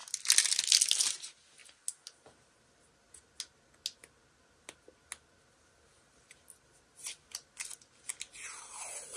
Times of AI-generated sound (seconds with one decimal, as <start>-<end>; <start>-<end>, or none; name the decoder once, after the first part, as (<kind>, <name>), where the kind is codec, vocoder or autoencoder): none